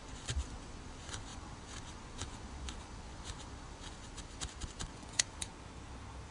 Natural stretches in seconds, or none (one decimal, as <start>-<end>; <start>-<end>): 5.5-6.3